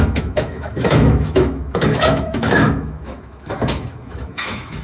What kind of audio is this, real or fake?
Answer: fake